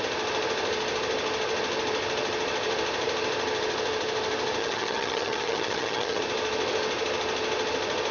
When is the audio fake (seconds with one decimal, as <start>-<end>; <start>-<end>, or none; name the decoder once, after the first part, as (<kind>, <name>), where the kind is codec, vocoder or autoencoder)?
4.6-6.2 (vocoder, HiFi-GAN)